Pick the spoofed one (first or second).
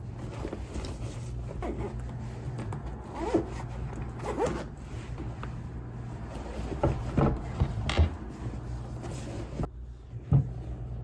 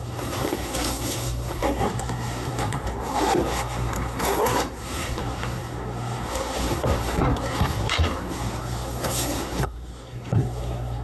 second